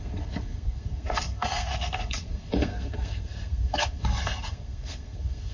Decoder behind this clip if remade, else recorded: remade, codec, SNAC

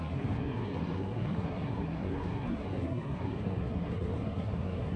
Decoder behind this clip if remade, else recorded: remade, codec, SNAC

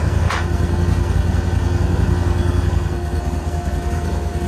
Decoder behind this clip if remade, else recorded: remade, codec, SNAC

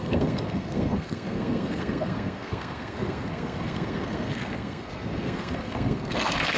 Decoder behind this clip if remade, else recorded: remade, codec, SNAC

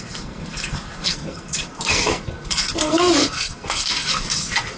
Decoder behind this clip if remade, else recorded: remade, codec, SNAC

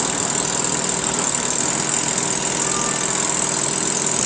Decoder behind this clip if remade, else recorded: recorded